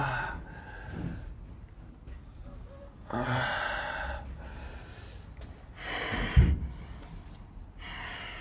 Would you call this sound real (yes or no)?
yes